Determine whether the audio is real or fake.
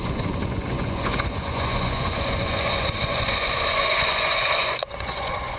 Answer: fake